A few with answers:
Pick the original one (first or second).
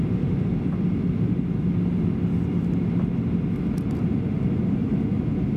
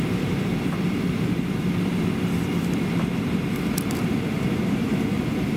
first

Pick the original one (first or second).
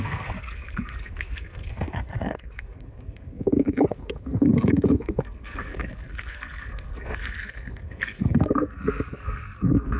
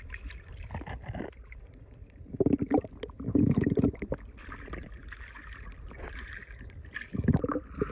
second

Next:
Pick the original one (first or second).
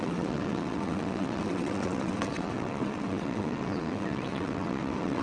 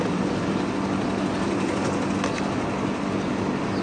second